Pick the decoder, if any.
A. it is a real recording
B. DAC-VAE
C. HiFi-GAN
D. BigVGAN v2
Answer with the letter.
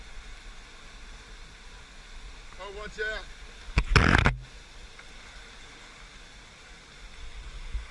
A